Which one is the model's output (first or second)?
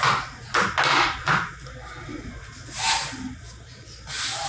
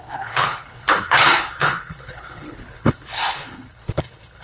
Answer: second